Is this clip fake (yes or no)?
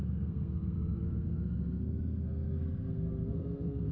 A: yes